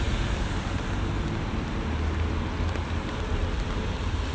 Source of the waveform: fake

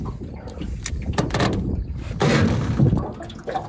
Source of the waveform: real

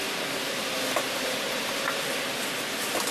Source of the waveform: real